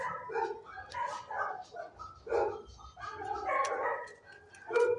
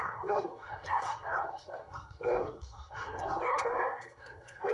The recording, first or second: first